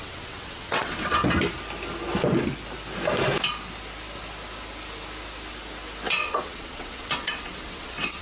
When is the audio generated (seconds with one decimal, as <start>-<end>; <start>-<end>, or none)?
0.0-1.2; 6.1-8.2